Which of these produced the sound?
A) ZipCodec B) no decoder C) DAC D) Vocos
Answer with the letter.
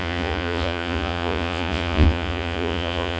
D